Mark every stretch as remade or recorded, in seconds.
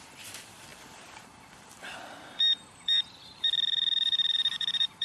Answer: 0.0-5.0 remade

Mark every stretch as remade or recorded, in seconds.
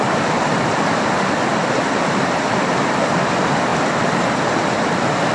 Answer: 0.0-5.3 recorded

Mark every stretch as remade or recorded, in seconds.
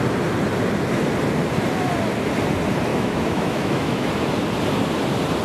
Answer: 0.0-2.9 recorded; 2.9-4.1 remade; 4.1-5.4 recorded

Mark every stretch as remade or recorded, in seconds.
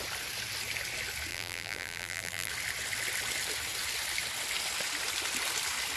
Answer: 0.0-1.3 recorded; 1.3-2.5 remade; 2.5-6.0 recorded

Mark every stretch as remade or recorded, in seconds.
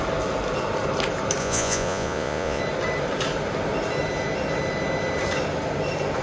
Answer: 0.0-1.4 recorded; 1.4-2.6 remade; 2.6-6.2 recorded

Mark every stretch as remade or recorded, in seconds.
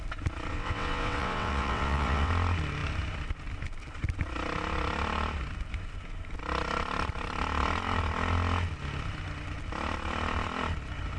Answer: 0.0-0.5 recorded; 0.5-2.3 remade; 2.3-11.2 recorded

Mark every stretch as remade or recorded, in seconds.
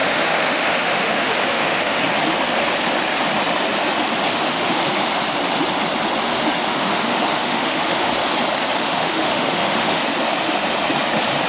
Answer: 0.0-2.0 remade; 2.0-4.3 recorded; 4.3-4.8 remade; 4.8-6.7 recorded; 6.7-8.1 remade; 8.1-8.8 recorded; 8.8-10.0 remade; 10.0-11.5 recorded